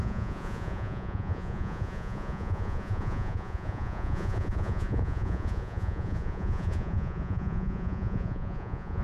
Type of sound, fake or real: fake